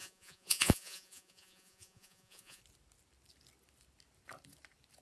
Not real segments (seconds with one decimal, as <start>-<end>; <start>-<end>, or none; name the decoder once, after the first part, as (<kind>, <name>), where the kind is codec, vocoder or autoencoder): 0.0-2.6 (vocoder, Vocos)